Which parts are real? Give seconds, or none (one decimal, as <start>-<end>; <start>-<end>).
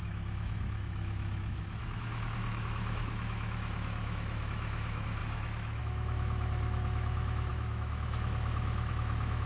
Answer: none